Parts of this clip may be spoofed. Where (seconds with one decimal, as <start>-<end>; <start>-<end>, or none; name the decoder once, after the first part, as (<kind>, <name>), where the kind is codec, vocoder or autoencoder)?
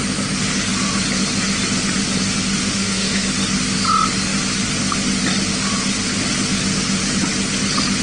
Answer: 2.6-3.3 (autoencoder, DAC-VAE)